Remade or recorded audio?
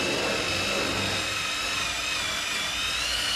recorded